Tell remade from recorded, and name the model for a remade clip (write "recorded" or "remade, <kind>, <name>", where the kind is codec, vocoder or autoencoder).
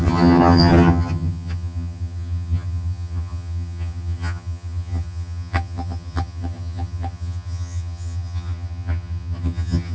remade, vocoder, HiFi-GAN